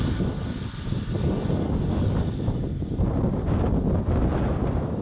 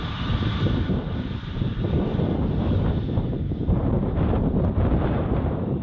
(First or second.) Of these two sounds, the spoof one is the second